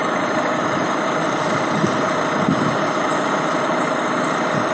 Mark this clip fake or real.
real